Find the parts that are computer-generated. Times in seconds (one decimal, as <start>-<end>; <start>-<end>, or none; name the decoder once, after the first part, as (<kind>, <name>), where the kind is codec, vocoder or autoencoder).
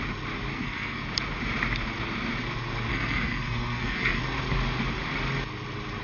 0.5-1.0 (codec, SNAC); 2.9-4.2